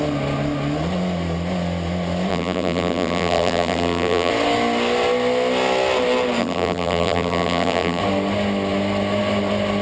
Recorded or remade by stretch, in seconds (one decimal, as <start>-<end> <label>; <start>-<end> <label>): 0.0-2.3 recorded; 2.3-4.3 remade; 4.3-6.4 recorded; 6.4-8.0 remade; 8.0-9.8 recorded